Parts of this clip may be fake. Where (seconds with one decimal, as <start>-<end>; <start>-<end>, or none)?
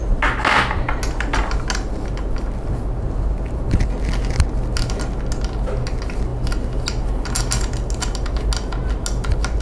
none